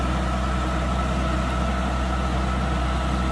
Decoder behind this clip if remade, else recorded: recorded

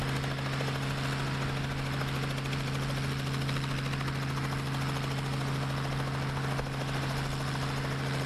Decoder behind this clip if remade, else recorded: recorded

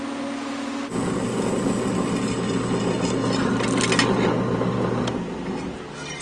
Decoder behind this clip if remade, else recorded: recorded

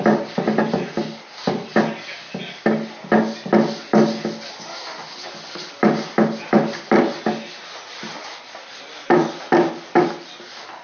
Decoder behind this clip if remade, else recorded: recorded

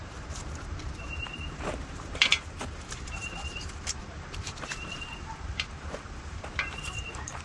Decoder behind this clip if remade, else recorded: remade, vocoder, BigVGAN v2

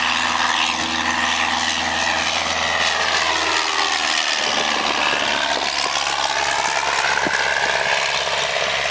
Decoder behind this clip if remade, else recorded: recorded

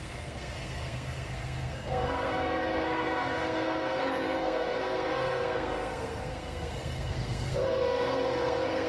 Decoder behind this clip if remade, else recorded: remade, codec, SNAC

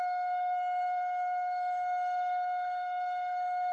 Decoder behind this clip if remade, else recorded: remade, codec, SNAC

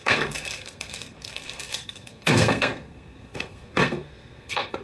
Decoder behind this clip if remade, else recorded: remade, codec, SNAC